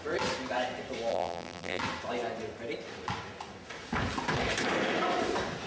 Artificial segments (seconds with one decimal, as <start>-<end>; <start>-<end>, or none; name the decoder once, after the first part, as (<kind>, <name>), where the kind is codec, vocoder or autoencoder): 1.1-1.8 (vocoder, BigVGAN v2)